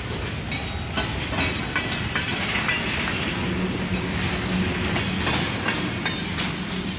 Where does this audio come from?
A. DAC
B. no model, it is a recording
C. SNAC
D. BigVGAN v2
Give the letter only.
B